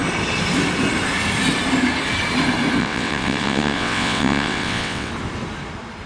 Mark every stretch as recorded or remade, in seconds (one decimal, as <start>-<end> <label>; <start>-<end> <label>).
0.0-2.8 recorded; 2.8-5.1 remade; 5.1-6.1 recorded